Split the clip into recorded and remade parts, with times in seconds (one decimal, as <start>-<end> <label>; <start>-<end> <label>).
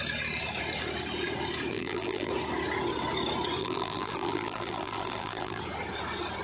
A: 0.0-1.7 recorded; 1.7-2.3 remade; 2.3-3.6 recorded; 3.6-5.6 remade; 5.6-6.4 recorded